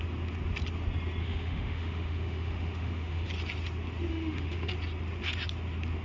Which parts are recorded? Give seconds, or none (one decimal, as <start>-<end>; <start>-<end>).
0.0-1.2; 3.3-4.1; 4.7-6.0